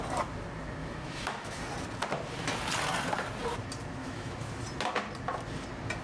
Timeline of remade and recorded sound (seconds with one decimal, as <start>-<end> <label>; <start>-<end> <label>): 0.0-0.8 recorded; 0.8-1.6 remade; 1.6-4.0 recorded; 4.0-4.6 remade; 4.6-6.0 recorded